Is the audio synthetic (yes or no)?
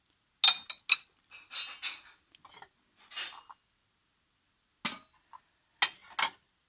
no